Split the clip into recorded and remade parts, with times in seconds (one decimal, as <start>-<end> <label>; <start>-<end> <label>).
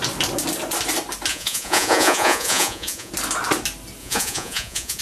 0.0-1.3 recorded; 1.3-3.1 remade; 3.1-4.0 recorded; 4.0-5.0 remade